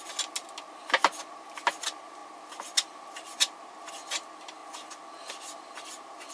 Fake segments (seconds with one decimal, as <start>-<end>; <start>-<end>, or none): none